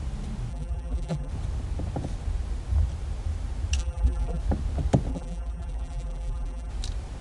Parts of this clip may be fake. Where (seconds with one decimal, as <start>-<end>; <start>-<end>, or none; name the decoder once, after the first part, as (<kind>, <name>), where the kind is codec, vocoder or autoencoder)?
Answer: 0.5-1.3 (vocoder, BigVGAN v2); 3.8-4.4; 5.1-6.7